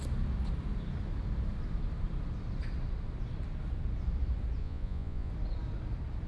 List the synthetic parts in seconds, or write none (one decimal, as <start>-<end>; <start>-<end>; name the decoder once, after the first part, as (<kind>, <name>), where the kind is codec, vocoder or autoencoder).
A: 4.6-5.3 (vocoder, Vocos)

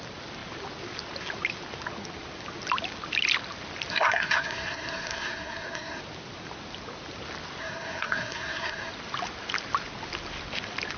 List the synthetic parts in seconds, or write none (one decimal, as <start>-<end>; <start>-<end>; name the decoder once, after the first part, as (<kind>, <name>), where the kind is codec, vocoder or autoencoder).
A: 3.9-6.0 (codec, SNAC); 7.6-8.9

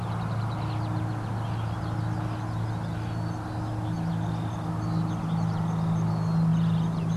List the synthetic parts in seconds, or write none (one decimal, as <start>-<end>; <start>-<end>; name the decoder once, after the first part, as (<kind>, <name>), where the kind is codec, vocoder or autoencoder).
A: 6.5-7.2 (vocoder, Vocos)

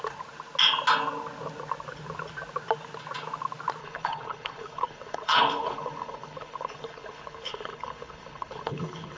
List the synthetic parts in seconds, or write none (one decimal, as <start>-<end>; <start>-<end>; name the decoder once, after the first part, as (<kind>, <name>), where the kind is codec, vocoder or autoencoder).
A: 3.8-9.2 (codec, HILCodec)

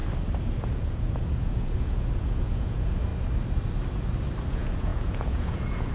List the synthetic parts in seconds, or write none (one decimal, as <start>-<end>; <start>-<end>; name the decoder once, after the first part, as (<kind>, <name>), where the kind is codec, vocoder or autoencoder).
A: 0.6-3.1 (vocoder, Vocos); 4.5-5.9

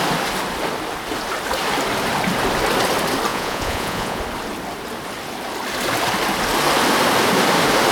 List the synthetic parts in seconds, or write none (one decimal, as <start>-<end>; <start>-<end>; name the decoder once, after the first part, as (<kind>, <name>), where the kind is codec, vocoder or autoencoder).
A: 3.3-4.2 (vocoder, Vocos)

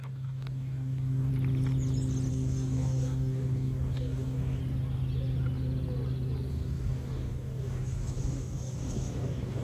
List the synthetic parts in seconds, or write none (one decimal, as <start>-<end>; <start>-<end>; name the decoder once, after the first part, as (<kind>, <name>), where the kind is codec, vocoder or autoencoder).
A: 0.0-1.3 (codec, DAC); 2.3-4.6; 6.5-9.6

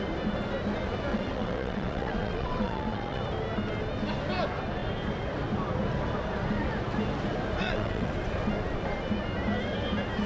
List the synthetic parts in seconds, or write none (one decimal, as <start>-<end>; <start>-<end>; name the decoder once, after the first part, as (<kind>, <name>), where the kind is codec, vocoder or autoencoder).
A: 1.1-3.2 (vocoder, WaveNeXt); 7.6-8.1